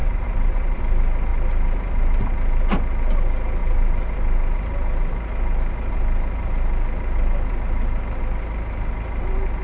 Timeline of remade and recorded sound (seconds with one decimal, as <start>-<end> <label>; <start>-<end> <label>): 0.0-0.8 remade; 0.8-1.3 recorded; 1.3-2.2 remade; 2.2-3.6 recorded; 3.6-8.2 remade; 8.2-9.6 recorded